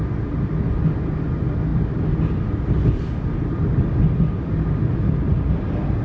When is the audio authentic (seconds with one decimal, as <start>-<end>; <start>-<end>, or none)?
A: 0.0-6.0